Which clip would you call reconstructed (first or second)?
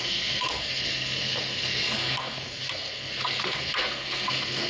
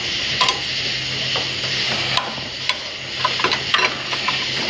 first